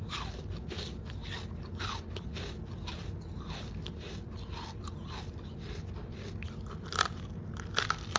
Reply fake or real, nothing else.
real